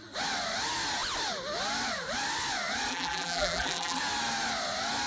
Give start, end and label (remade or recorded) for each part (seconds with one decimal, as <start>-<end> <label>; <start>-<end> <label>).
0.0-2.9 recorded; 2.9-4.0 remade; 4.0-5.1 recorded